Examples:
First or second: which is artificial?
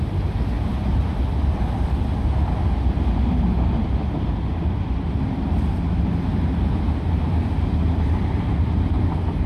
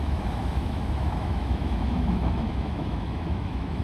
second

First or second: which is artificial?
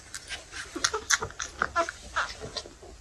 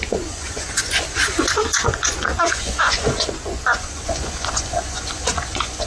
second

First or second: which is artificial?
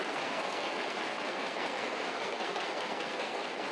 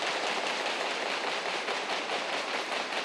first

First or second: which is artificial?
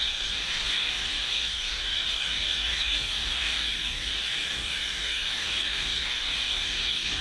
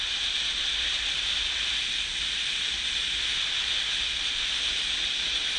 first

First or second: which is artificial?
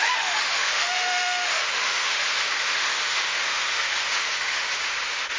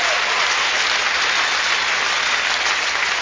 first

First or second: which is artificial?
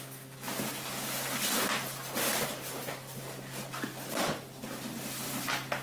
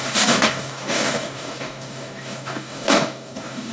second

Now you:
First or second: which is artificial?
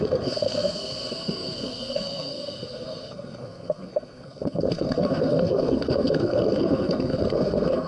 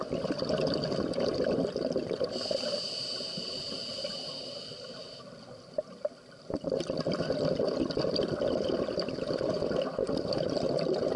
first